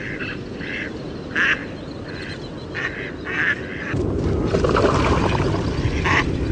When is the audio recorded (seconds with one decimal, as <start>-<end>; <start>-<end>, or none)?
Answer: 1.6-5.5